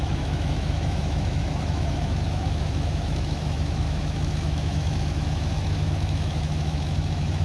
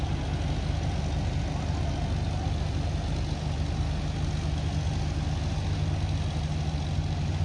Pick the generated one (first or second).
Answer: first